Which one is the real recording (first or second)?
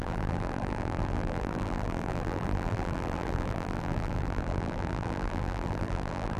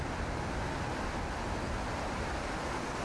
second